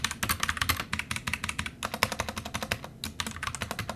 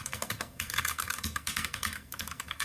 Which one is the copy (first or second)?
second